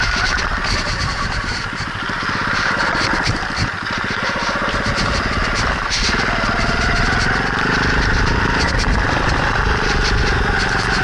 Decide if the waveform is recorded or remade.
recorded